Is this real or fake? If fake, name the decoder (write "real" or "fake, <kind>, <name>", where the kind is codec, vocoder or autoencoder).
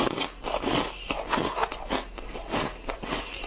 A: real